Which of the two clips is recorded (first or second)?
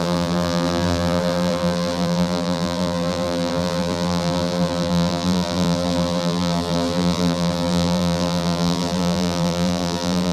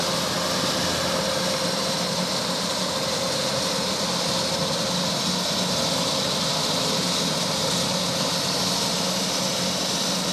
second